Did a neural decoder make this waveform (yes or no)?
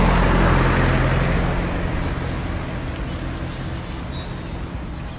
no